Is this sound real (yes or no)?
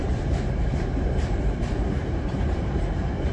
no